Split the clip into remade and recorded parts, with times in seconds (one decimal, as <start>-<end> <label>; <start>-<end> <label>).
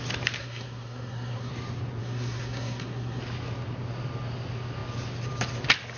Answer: 0.0-0.4 recorded; 0.4-1.5 remade; 1.5-2.0 recorded; 2.0-3.2 remade; 3.2-6.0 recorded